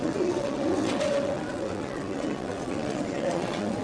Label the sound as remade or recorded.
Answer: remade